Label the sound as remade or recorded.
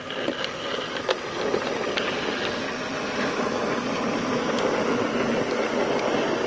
recorded